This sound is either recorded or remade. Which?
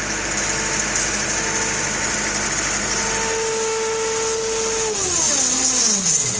recorded